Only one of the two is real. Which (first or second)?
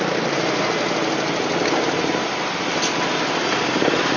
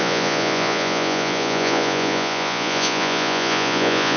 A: first